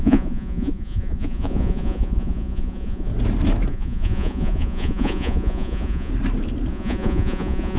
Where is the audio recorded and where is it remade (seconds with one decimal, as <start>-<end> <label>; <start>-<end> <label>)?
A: 0.0-3.1 remade; 3.1-3.7 recorded; 3.7-6.1 remade; 6.1-6.7 recorded; 6.7-7.8 remade